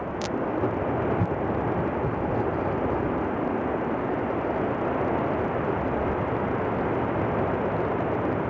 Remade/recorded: recorded